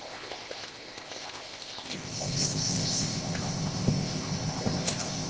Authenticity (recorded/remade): remade